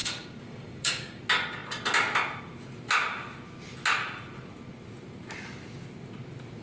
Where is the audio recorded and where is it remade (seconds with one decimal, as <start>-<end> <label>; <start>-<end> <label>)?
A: 0.0-1.2 remade; 1.2-6.6 recorded